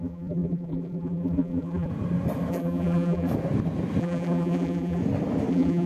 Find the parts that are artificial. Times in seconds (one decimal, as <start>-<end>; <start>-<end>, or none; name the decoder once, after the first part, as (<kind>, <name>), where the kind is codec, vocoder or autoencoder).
0.0-1.9 (vocoder, BigVGAN v2); 2.5-3.3; 4.0-5.0; 5.5-5.9

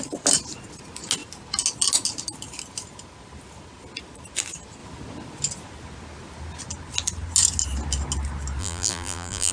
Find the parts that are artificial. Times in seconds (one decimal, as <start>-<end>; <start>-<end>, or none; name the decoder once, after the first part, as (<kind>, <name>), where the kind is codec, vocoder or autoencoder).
8.6-9.5 (vocoder, BigVGAN v2)

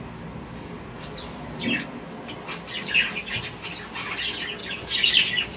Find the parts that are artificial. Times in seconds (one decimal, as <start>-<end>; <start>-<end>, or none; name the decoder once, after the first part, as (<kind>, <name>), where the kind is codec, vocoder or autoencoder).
4.6-5.6 (vocoder, BigVGAN v2)

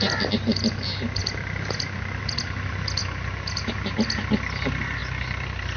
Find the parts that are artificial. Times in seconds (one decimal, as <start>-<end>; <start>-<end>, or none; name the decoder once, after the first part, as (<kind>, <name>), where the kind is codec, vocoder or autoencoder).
none